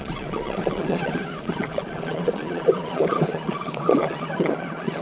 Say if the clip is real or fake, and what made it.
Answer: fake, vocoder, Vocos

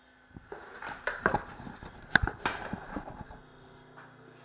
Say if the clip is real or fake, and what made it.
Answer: real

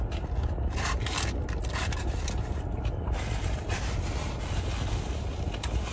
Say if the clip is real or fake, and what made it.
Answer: real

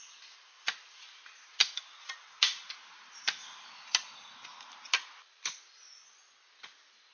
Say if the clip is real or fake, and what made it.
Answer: real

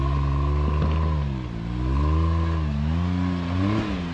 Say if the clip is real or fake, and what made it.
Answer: real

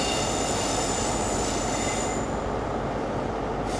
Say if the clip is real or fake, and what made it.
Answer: real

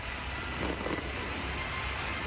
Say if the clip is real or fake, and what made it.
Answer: real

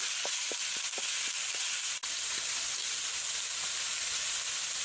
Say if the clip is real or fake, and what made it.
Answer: real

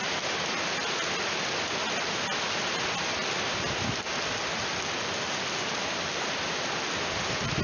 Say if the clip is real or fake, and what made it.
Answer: real